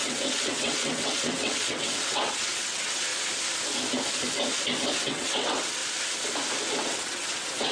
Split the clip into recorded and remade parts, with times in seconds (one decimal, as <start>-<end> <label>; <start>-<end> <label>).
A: 0.0-3.1 remade; 3.1-5.0 recorded; 5.0-5.8 remade; 5.8-6.8 recorded; 6.8-7.7 remade

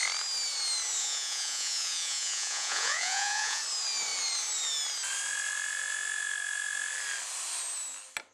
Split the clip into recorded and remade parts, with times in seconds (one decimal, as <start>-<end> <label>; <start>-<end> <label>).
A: 0.0-1.0 recorded; 1.0-3.6 remade; 3.6-8.3 recorded

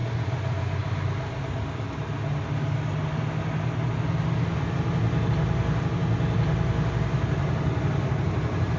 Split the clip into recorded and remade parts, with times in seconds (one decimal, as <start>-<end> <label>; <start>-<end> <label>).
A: 0.0-8.8 recorded

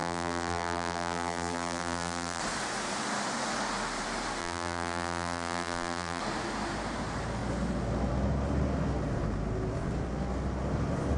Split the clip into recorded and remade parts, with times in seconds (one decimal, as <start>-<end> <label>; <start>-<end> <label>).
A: 0.0-2.4 remade; 2.4-4.4 recorded; 4.4-6.2 remade; 6.2-11.2 recorded

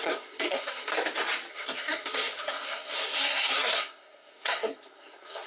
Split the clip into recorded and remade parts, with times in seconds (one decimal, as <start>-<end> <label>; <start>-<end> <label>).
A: 0.0-0.9 remade; 0.9-1.5 recorded; 1.5-5.5 remade

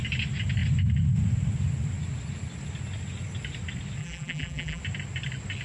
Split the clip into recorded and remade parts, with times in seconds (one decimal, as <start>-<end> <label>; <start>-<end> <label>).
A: 0.0-4.0 recorded; 4.0-4.8 remade; 4.8-5.6 recorded

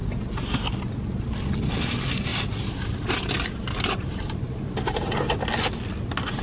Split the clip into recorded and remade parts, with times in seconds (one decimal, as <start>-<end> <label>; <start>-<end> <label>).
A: 0.0-2.3 recorded; 2.3-5.4 remade; 5.4-6.4 recorded

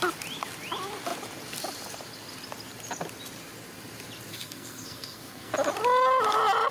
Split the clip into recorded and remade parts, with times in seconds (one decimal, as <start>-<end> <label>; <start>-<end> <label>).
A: 0.0-4.3 recorded; 4.3-5.5 remade; 5.5-6.7 recorded